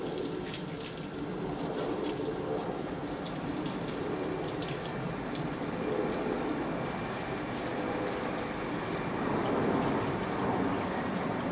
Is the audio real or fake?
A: real